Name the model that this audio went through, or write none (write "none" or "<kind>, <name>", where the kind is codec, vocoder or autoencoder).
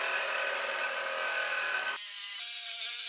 none